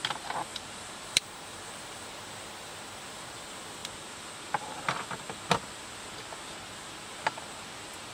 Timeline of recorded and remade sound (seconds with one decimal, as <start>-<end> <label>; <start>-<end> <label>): 0.0-0.5 recorded; 0.5-2.1 remade; 2.1-8.1 recorded